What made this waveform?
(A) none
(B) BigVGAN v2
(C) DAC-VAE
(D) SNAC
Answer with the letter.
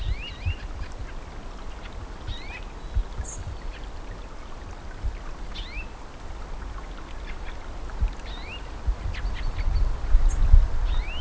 A